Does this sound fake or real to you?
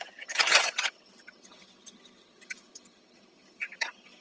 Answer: fake